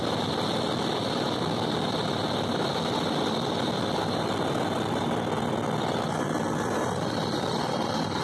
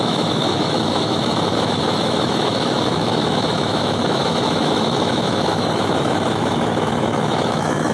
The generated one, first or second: second